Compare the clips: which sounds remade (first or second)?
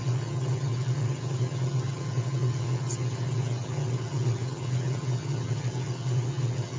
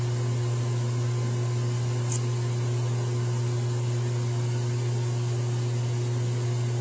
first